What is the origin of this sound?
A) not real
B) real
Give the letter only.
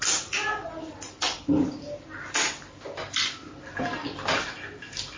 B